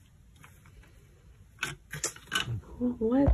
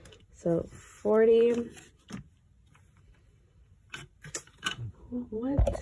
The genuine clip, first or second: first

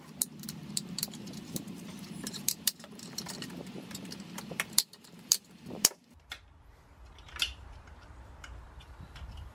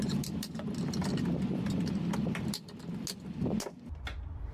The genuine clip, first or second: second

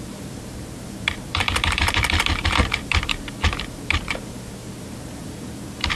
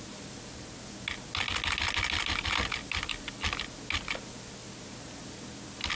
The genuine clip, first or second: second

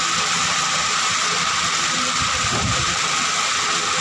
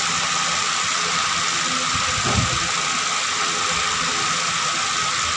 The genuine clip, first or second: second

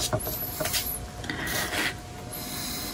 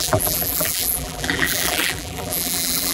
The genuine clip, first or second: first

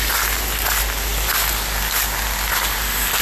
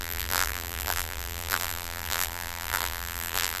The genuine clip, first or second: first